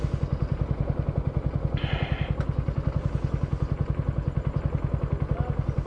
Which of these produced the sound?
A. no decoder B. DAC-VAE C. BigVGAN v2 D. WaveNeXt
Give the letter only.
A